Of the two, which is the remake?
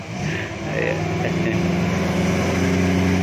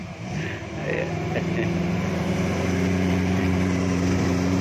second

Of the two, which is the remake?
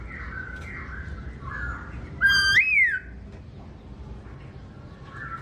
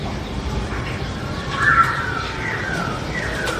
second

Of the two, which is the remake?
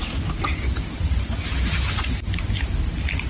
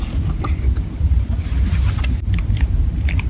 second